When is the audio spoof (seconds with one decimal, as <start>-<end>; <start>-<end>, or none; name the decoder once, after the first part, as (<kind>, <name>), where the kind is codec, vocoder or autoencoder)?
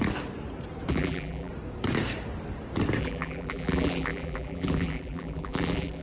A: 0.9-1.5 (vocoder, BigVGAN v2); 3.0-6.0